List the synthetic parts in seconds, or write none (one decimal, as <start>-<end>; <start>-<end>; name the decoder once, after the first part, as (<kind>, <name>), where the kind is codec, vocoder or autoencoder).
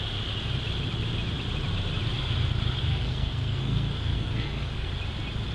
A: 2.9-4.9 (codec, SNAC)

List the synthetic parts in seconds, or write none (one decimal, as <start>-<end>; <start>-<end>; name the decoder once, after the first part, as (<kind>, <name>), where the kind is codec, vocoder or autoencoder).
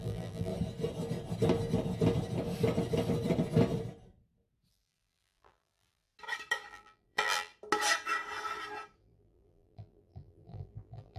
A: 0.0-0.5 (vocoder, BigVGAN v2); 4.7-6.1; 6.7-7.5; 9.0-11.2